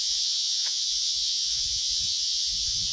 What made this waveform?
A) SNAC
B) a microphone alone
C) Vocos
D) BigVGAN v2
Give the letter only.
C